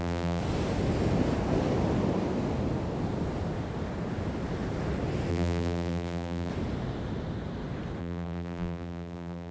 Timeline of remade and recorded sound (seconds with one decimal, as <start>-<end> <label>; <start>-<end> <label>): 0.0-0.4 remade; 0.4-5.3 recorded; 5.3-6.5 remade; 6.5-8.0 recorded; 8.0-9.5 remade